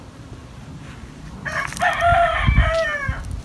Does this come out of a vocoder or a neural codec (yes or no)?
no